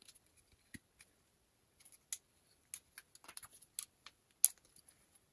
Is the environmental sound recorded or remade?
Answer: recorded